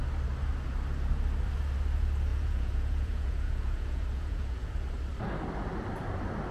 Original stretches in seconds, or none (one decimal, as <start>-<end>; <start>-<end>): 0.0-2.3; 4.7-6.5

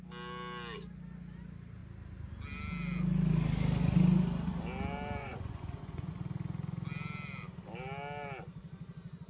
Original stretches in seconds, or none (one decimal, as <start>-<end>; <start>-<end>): 0.0-5.2; 6.1-9.3

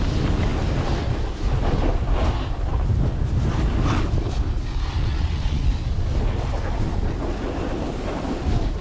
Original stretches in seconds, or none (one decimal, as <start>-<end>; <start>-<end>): 0.0-5.0; 5.7-8.8

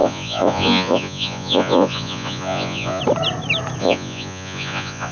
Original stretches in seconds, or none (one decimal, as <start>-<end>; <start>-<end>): 3.0-3.8

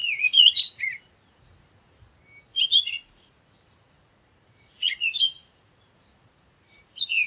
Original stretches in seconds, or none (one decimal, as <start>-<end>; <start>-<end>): 2.0-2.5

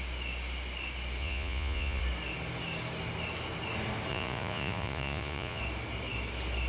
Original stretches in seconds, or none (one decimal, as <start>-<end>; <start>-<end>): 0.0-1.2; 2.0-4.1; 5.6-6.7

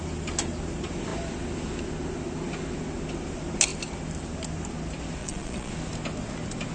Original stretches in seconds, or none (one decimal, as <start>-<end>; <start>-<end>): 0.0-5.2; 5.7-6.7

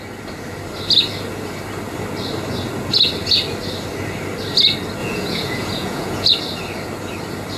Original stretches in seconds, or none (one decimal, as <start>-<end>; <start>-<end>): 0.0-5.0; 6.3-7.6